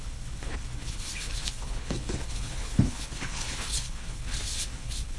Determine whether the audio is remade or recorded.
remade